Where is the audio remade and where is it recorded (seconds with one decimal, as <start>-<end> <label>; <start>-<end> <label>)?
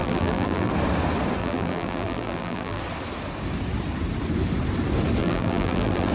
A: 0.0-0.7 remade; 0.7-1.4 recorded; 1.4-2.8 remade; 2.8-5.2 recorded; 5.2-6.1 remade